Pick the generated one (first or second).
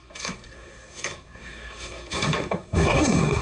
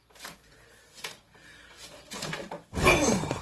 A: first